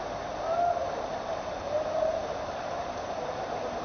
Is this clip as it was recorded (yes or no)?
yes